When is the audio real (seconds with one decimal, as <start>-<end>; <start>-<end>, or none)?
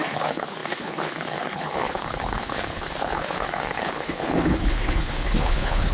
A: none